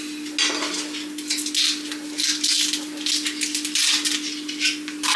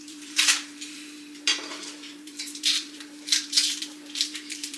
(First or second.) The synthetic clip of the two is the second